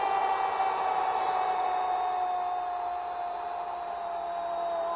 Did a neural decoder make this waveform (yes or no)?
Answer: no